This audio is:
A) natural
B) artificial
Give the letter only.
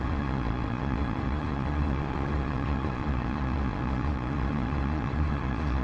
B